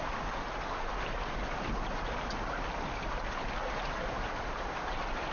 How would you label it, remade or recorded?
recorded